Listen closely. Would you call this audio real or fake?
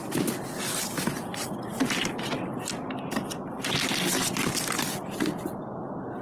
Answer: real